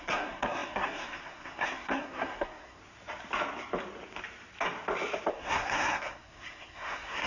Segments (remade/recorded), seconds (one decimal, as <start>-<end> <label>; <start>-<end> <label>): 0.0-2.8 remade; 2.8-5.3 recorded; 5.3-7.3 remade